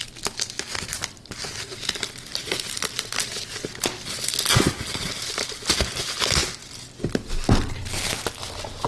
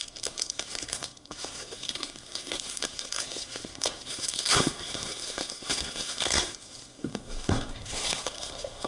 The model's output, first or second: second